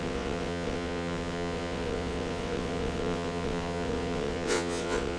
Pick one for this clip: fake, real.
fake